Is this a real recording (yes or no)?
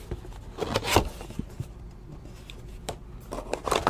yes